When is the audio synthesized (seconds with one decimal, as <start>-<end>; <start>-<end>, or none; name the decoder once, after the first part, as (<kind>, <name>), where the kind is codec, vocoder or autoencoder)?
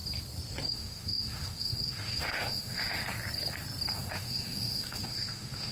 0.7-3.0 (autoencoder, DAC-VAE); 3.9-5.7